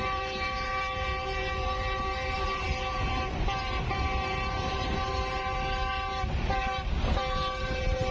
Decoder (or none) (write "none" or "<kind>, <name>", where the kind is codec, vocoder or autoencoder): vocoder, BigVGAN v2